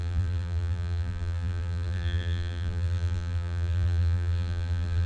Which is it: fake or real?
fake